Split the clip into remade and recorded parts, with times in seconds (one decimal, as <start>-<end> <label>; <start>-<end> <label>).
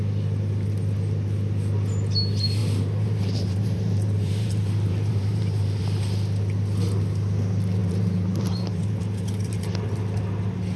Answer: 0.0-2.6 recorded; 2.6-5.8 remade; 5.8-7.8 recorded; 7.8-9.6 remade; 9.6-10.8 recorded